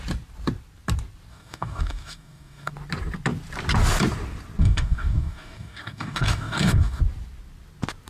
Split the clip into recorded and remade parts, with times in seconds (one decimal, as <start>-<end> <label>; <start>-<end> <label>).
0.0-1.3 recorded; 1.3-2.7 remade; 2.7-4.6 recorded; 4.6-7.0 remade; 7.0-8.1 recorded